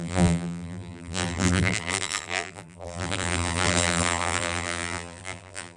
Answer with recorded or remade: remade